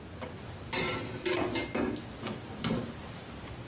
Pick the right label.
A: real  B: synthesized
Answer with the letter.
A